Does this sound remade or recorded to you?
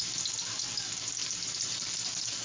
recorded